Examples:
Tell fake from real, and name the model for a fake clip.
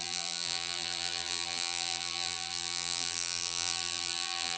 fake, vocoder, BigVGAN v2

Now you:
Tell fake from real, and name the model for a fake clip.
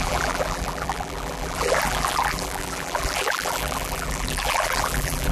fake, vocoder, BigVGAN v2